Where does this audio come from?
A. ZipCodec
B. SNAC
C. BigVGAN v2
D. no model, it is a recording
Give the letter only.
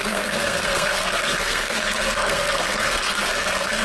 B